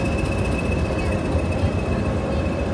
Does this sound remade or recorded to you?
recorded